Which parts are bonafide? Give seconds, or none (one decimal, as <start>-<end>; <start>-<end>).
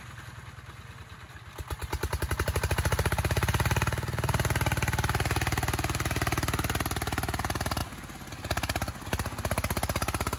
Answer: 0.0-10.4